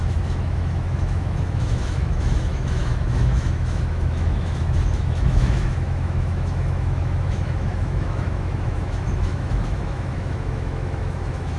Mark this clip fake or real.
fake